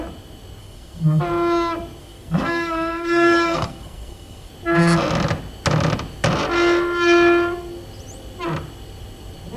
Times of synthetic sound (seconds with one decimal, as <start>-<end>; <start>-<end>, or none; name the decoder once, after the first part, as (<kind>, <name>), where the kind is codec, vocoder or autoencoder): 0.6-1.2 (codec, SNAC); 2.0-4.5